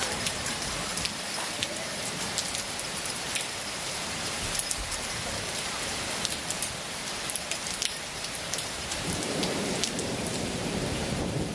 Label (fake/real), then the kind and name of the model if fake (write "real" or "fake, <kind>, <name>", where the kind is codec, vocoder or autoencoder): fake, vocoder, BigVGAN v2